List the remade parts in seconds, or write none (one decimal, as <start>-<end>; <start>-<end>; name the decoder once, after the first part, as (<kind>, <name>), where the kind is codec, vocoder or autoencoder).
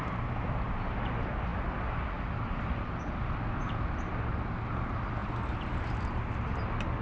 none